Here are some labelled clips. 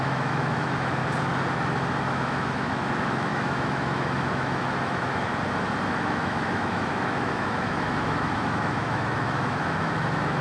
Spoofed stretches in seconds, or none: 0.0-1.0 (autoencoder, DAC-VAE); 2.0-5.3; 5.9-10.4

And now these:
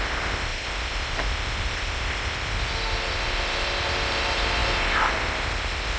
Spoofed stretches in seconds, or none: none

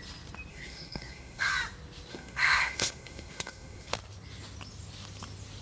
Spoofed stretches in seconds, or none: 0.5-1.5 (codec, SNAC); 2.1-3.9

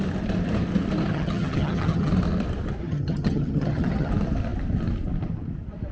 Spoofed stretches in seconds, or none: 1.1-2.1 (vocoder, HiFi-GAN); 2.8-4.1

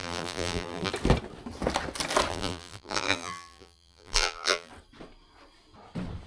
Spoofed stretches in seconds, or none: 0.0-0.9 (vocoder, BigVGAN v2); 2.3-4.7